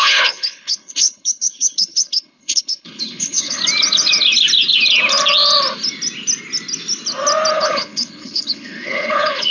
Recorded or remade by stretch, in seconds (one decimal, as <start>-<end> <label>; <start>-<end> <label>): 0.0-3.6 remade; 3.6-7.5 recorded; 7.5-9.5 remade